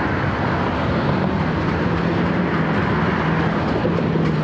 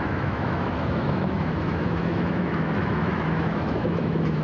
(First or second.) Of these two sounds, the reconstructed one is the second